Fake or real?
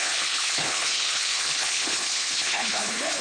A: fake